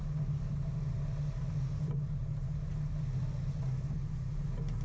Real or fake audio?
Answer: real